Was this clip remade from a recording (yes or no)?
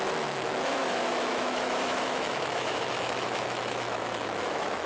yes